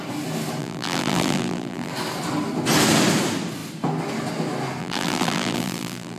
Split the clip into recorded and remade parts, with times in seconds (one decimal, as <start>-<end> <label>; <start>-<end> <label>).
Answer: 0.0-0.6 recorded; 0.6-1.9 remade; 1.9-4.8 recorded; 4.8-6.2 remade